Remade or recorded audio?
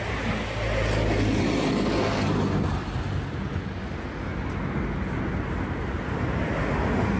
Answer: recorded